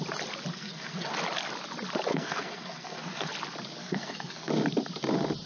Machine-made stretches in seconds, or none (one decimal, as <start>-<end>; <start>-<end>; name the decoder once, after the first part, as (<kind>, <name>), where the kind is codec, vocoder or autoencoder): 0.5-1.1 (codec, SNAC); 2.1-3.3; 3.8-4.5